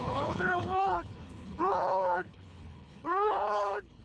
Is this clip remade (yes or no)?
yes